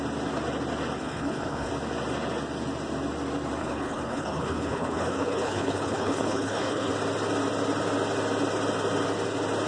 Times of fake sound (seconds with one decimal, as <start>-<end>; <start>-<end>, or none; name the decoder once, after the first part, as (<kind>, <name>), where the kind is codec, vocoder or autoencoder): 1.0-1.7 (codec, HILCodec); 3.6-6.9